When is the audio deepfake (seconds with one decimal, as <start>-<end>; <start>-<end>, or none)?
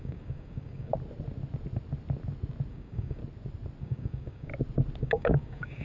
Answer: 0.0-0.9; 2.7-3.2; 3.8-4.5; 5.0-5.8